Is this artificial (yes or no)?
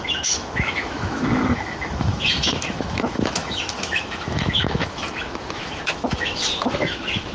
yes